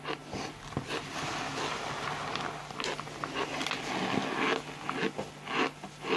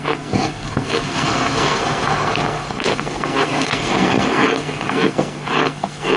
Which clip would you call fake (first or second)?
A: second